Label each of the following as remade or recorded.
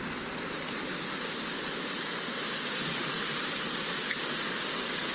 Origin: recorded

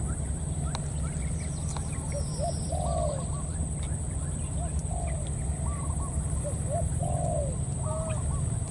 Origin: recorded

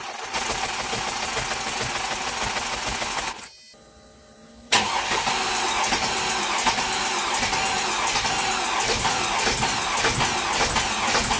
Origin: recorded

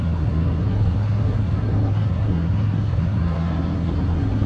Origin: remade